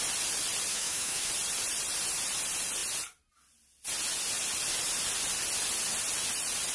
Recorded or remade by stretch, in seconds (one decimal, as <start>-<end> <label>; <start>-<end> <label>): 0.0-0.7 recorded; 0.7-1.3 remade; 1.3-6.7 recorded